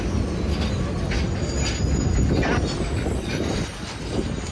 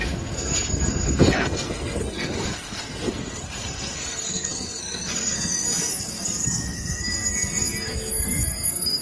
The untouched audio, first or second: first